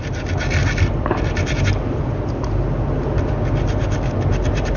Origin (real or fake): real